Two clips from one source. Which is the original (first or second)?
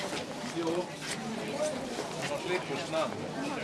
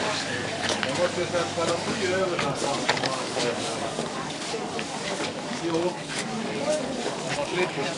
first